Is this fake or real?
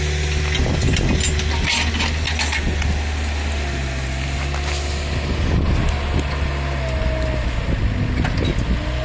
real